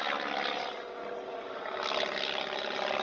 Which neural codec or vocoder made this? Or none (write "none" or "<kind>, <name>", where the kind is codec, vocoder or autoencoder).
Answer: none